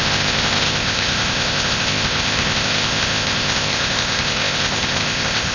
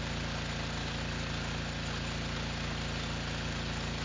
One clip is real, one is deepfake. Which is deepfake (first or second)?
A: first